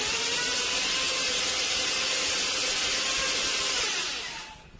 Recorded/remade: recorded